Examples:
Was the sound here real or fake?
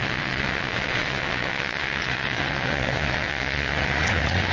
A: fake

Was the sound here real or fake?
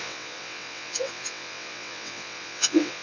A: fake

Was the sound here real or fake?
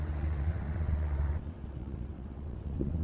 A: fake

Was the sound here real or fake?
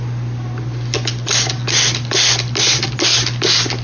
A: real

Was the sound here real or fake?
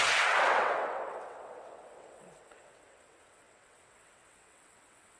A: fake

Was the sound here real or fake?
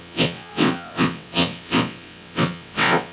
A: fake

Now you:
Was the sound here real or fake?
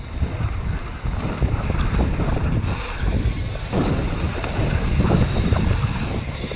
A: real